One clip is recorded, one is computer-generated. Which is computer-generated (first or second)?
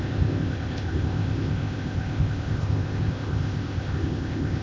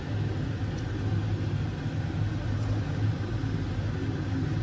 first